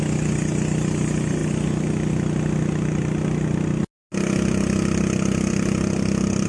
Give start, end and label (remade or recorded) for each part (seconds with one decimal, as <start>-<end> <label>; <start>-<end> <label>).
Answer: 0.0-6.5 recorded